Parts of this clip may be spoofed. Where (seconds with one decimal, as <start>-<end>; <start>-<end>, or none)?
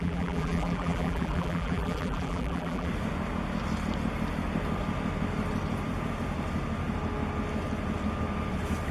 0.0-2.9